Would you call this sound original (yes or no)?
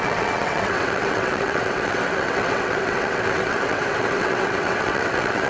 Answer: no